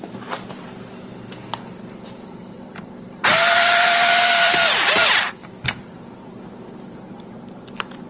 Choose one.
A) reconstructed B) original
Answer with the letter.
A